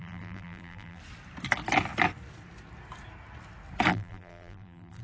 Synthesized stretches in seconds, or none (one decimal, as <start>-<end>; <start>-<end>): 0.0-1.0; 3.9-5.0